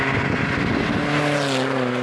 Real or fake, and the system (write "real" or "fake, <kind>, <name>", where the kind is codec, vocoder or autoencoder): real